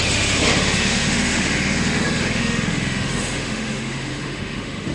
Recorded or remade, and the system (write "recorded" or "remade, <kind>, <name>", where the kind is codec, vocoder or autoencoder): remade, autoencoder, DAC-VAE